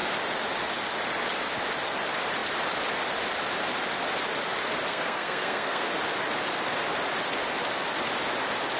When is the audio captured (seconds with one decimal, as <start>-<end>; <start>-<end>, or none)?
0.0-4.9; 5.9-8.8